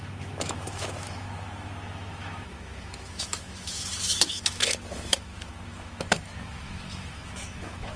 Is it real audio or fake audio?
fake